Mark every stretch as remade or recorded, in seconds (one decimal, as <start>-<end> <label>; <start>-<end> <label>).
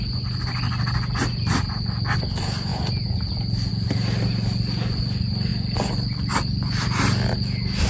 0.0-7.9 recorded